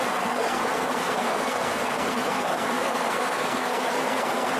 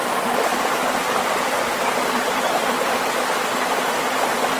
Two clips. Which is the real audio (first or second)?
second